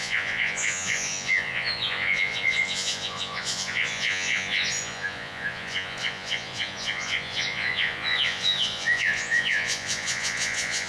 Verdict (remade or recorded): remade